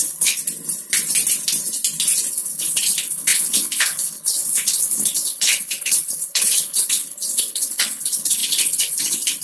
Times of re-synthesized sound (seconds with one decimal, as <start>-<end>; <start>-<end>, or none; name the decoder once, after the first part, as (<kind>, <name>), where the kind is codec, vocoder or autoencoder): 0.0-0.4 (codec, HILCodec); 2.3-9.4